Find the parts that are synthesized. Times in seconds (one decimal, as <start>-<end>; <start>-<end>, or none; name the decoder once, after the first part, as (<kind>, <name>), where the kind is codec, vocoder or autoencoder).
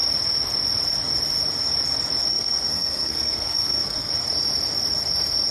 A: 2.3-4.1 (codec, SNAC)